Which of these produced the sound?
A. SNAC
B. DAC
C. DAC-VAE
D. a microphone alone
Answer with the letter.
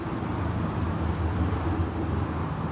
D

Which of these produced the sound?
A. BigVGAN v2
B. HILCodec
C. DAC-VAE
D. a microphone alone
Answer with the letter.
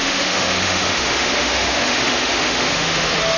C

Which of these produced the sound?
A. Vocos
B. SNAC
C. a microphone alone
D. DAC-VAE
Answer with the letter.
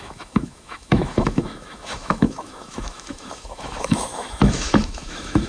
D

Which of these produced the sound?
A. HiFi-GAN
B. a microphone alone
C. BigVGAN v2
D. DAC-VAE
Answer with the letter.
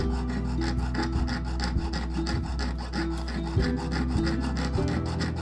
B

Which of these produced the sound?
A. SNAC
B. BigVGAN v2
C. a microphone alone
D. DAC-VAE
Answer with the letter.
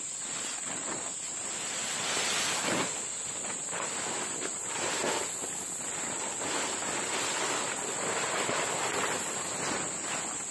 C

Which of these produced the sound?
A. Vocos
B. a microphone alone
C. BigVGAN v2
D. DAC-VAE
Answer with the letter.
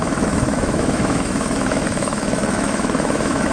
D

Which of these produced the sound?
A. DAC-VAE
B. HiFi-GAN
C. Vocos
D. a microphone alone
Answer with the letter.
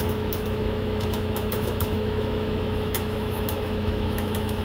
A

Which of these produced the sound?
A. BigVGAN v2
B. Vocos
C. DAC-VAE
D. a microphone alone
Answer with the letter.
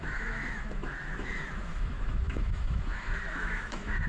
C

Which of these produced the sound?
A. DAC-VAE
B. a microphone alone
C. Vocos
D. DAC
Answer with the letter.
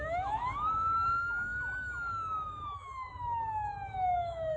A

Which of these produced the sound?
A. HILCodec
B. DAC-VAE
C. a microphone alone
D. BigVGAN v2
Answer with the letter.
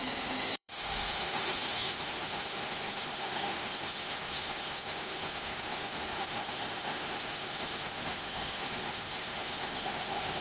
B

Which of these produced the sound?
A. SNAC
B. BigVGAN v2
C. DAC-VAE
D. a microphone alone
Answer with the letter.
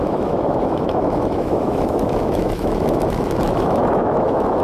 C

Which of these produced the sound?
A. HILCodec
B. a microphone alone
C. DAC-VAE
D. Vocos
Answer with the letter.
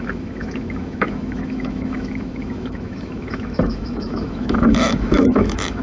C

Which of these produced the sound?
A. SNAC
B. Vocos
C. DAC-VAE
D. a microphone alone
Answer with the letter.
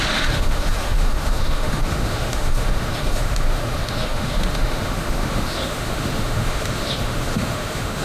C